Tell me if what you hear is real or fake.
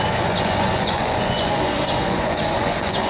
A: fake